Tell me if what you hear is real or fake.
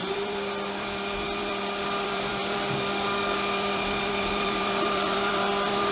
fake